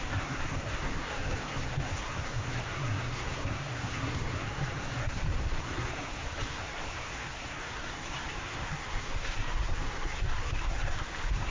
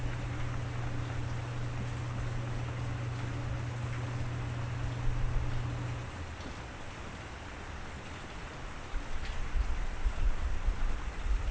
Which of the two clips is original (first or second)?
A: second